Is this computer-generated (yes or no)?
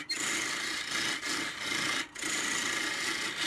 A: no